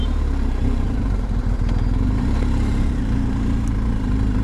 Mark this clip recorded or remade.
remade